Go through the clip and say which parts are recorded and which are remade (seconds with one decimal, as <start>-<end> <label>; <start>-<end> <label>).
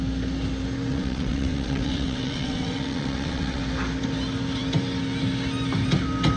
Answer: 0.0-0.9 recorded; 0.9-3.6 remade; 3.6-6.4 recorded